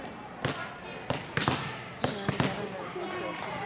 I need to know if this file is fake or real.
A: real